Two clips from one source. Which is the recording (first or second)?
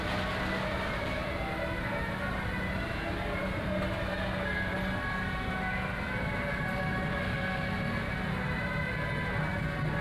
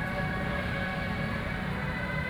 first